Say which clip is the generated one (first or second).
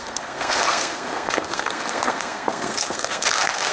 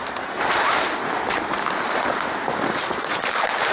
first